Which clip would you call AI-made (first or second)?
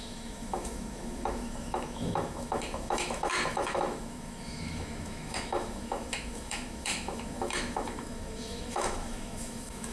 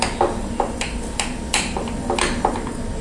first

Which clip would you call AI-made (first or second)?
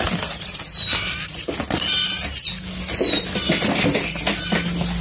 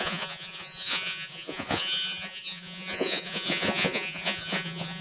second